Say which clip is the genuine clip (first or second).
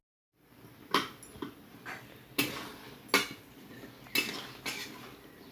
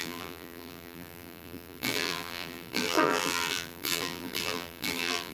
first